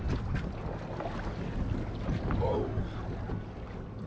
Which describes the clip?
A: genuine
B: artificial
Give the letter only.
A